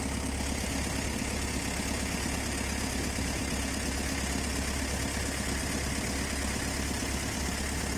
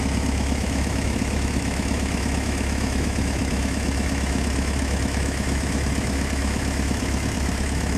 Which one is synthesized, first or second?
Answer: second